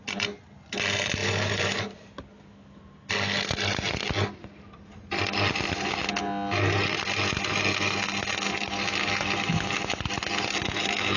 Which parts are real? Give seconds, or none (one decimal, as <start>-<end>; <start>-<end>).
0.0-1.2; 2.1-11.2